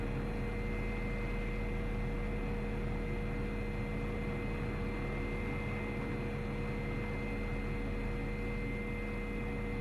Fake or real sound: real